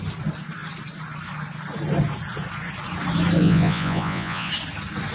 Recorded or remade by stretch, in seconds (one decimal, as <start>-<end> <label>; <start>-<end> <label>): 0.0-3.4 recorded; 3.4-4.5 remade; 4.5-5.1 recorded